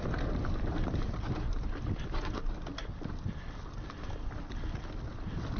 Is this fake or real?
real